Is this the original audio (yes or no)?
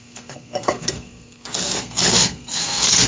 no